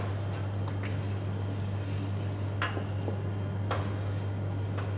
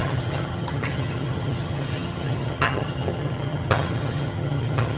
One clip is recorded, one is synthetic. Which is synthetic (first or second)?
second